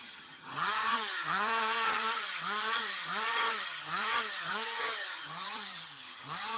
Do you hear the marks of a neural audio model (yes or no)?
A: yes